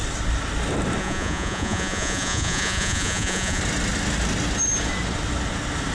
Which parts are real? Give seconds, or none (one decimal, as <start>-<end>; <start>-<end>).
0.0-1.0; 3.6-5.9